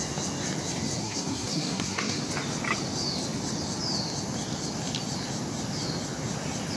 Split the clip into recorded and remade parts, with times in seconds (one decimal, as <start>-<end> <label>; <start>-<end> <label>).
0.0-1.0 recorded; 1.0-2.2 remade; 2.2-6.8 recorded